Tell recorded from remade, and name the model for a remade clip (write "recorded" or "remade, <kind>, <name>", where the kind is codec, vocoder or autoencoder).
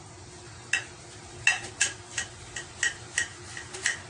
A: recorded